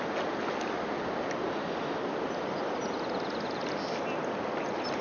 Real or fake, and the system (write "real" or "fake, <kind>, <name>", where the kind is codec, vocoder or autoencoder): real